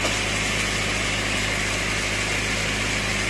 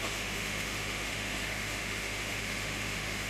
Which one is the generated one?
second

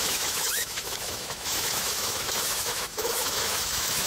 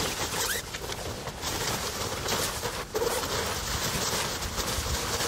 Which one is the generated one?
first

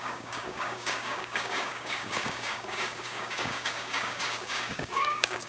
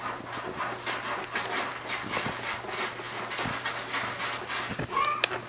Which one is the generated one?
first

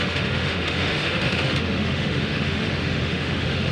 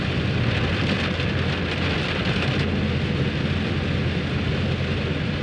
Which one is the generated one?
first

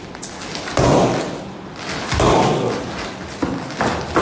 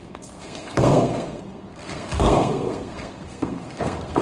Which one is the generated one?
second